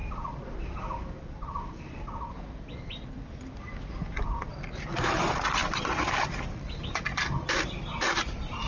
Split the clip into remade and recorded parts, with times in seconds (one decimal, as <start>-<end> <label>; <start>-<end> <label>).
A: 0.0-8.7 remade